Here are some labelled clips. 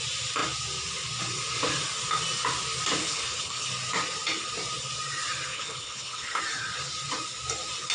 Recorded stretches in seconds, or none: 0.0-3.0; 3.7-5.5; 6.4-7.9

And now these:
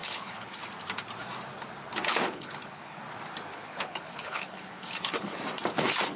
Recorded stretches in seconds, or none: 0.6-2.1; 3.0-3.5; 5.3-6.2

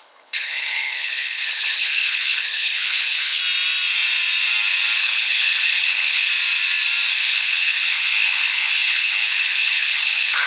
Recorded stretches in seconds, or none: 3.4-5.0; 6.3-7.1

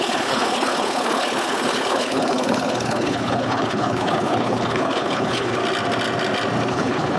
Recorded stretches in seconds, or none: 5.6-6.7